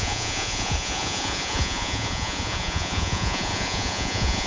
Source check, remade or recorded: remade